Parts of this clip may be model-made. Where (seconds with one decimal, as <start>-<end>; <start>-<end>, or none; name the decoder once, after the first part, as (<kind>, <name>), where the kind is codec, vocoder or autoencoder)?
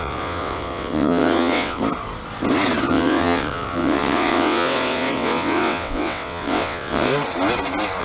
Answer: 0.0-1.8 (vocoder, WaveNeXt); 2.9-7.1